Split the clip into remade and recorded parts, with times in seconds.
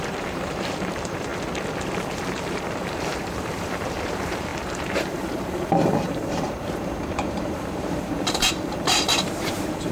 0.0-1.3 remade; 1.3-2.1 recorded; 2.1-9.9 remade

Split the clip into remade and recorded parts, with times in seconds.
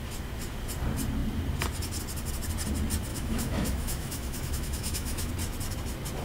0.0-3.1 recorded; 3.1-5.3 remade; 5.3-6.2 recorded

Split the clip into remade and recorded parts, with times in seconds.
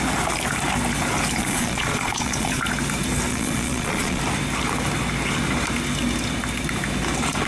0.0-1.4 recorded; 1.4-2.6 remade; 2.6-3.3 recorded; 3.3-4.2 remade; 4.2-7.5 recorded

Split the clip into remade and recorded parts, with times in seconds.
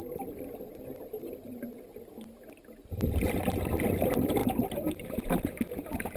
0.0-4.4 recorded; 4.4-5.4 remade; 5.4-6.2 recorded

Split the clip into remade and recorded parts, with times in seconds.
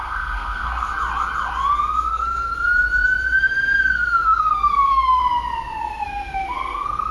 0.0-0.9 remade; 0.9-2.1 recorded; 2.1-2.5 remade; 2.5-3.4 recorded; 3.4-5.2 remade; 5.2-5.8 recorded; 5.8-7.1 remade